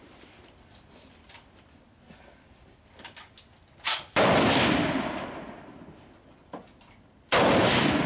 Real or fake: real